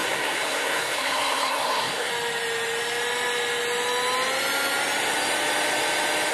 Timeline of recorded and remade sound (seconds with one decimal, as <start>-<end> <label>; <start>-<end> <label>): 0.0-2.1 remade; 2.1-6.3 recorded